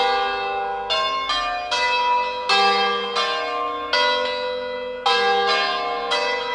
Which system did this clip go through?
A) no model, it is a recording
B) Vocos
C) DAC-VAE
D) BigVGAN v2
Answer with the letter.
A